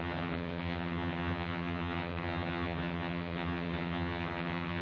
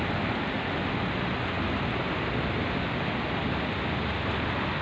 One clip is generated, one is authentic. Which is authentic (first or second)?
second